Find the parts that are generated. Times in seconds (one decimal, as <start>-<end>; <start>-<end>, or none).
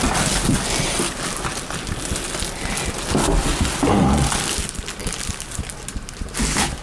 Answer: none